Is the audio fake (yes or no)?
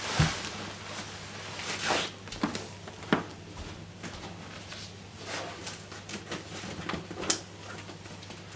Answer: no